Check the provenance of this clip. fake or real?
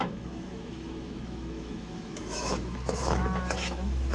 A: fake